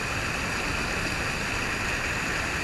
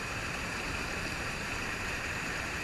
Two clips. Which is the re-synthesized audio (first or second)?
second